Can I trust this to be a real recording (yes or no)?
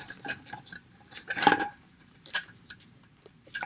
no